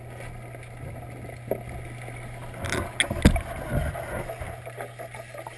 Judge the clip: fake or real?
real